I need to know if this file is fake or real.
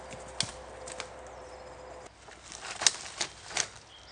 real